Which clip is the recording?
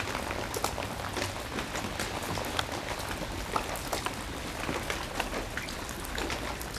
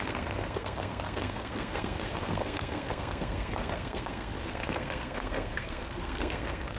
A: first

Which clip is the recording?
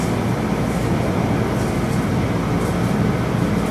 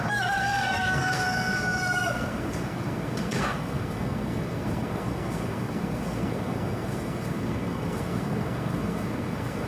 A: first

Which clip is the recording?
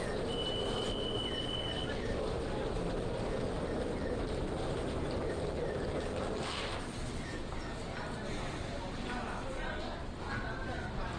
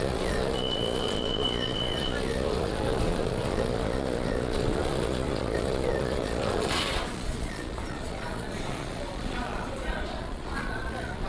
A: first